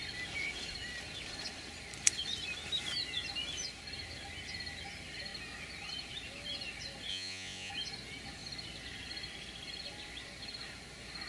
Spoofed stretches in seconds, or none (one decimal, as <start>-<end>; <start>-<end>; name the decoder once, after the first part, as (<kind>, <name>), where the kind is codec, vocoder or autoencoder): 7.1-7.7 (vocoder, Vocos)